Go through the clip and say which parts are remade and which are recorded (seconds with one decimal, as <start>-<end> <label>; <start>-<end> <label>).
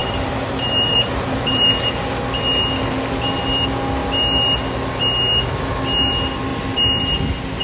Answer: 0.0-1.7 remade; 1.7-7.6 recorded